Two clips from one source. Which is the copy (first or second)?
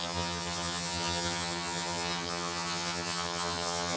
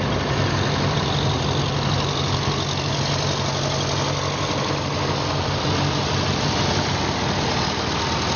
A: first